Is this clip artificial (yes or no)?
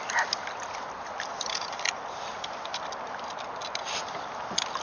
no